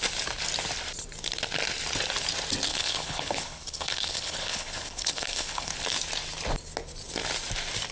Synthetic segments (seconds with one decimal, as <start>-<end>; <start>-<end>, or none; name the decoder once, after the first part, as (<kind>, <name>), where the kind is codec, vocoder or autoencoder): 2.7-5.7 (codec, HILCodec)

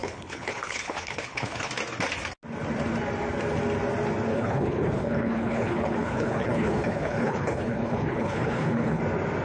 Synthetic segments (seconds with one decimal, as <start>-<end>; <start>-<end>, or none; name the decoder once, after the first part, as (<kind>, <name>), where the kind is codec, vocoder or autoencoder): 0.0-1.7 (codec, HILCodec); 4.3-9.0

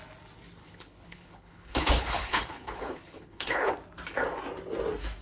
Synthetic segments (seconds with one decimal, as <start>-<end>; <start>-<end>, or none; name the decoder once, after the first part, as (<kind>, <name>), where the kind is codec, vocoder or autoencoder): 0.6-3.7 (codec, HILCodec)

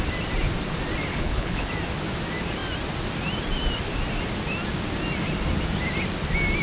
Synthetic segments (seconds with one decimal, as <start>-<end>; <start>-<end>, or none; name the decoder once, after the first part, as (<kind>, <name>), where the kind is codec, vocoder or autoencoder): 1.1-1.7 (codec, HILCodec)